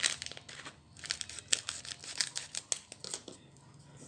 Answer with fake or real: real